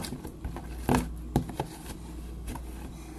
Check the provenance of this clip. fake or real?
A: real